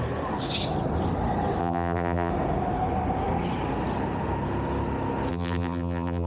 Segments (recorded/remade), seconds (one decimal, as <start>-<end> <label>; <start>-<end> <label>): 0.0-1.6 recorded; 1.6-2.3 remade; 2.3-5.3 recorded; 5.3-6.3 remade

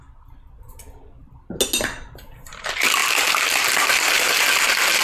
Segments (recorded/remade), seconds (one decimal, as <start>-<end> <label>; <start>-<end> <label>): 0.0-5.0 recorded